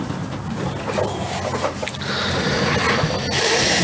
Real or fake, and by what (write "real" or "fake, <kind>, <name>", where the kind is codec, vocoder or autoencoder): real